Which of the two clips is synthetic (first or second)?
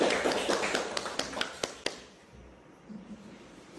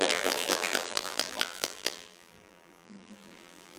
second